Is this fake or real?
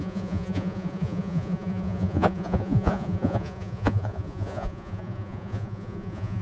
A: fake